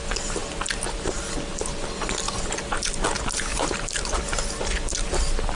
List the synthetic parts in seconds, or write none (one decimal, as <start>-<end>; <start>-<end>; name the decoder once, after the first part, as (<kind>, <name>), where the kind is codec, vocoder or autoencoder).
3.5-4.2 (vocoder, BigVGAN v2)